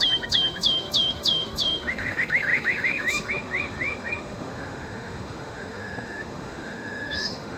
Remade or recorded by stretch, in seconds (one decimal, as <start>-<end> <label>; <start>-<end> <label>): 0.0-7.6 remade